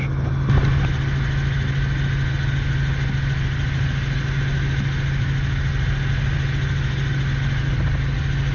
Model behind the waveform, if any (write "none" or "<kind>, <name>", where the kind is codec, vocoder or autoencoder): none